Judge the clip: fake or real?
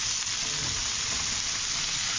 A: real